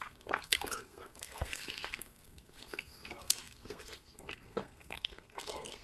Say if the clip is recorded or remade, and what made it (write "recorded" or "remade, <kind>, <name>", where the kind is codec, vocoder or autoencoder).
remade, codec, SNAC